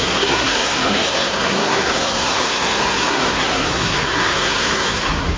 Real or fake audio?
fake